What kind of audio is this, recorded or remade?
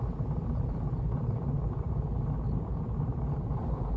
recorded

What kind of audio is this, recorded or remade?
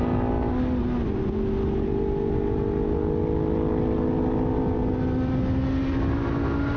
recorded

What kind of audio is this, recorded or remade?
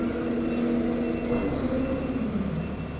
recorded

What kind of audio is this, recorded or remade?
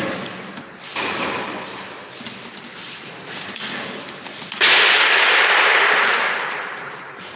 recorded